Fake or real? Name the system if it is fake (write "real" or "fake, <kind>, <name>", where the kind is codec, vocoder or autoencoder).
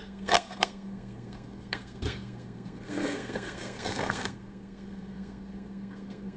fake, codec, SNAC